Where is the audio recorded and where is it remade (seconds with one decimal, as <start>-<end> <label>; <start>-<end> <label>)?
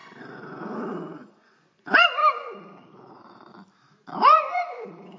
0.0-2.2 remade; 2.2-3.1 recorded; 3.1-3.5 remade; 3.5-4.2 recorded; 4.2-5.2 remade